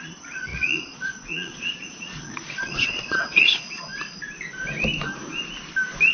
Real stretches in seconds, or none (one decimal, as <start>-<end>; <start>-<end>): 3.9-6.1